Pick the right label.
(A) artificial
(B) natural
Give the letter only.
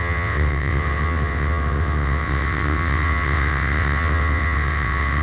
A